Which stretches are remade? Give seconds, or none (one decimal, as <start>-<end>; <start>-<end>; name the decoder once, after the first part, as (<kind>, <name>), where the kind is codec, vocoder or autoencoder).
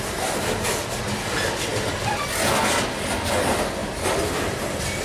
none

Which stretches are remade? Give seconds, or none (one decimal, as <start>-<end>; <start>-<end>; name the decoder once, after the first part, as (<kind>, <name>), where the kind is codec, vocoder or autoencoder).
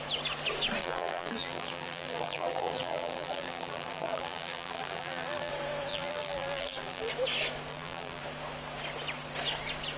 0.8-5.5 (vocoder, BigVGAN v2); 5.9-7.1; 7.7-8.2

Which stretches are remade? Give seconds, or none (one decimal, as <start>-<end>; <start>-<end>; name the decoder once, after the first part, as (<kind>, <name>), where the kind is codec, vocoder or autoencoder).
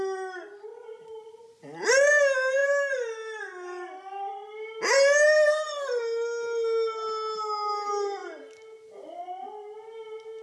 0.7-1.4 (vocoder, BigVGAN v2); 2.6-3.4; 8.2-8.8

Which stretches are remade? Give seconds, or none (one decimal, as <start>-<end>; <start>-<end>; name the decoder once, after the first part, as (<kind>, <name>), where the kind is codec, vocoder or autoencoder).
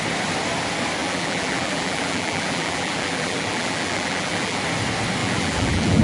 1.0-4.6 (vocoder, BigVGAN v2); 5.2-6.0